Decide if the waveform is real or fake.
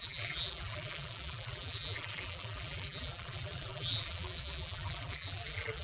fake